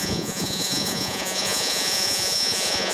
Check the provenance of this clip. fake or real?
fake